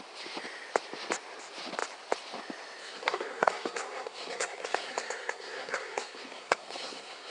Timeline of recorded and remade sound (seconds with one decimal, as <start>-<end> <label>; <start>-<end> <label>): 0.0-2.8 recorded; 2.8-7.3 remade